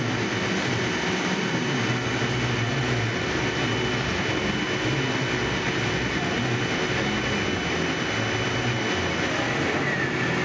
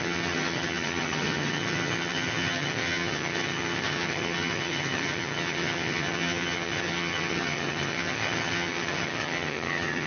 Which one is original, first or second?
first